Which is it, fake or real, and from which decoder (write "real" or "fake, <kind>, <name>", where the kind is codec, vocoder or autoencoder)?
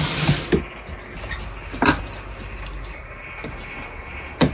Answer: real